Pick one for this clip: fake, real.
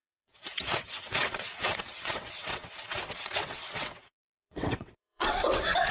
fake